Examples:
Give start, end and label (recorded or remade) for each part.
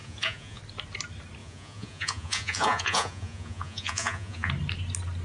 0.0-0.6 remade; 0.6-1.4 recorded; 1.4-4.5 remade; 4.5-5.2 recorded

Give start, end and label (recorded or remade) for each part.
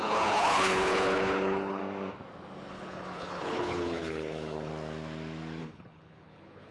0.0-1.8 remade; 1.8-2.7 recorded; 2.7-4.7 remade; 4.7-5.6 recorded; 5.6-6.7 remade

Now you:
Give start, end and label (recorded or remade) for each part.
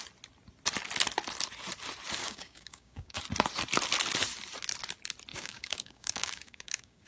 0.0-2.2 recorded; 2.2-3.2 remade; 3.2-5.3 recorded; 5.3-7.1 remade